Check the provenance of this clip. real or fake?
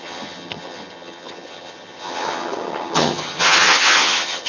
fake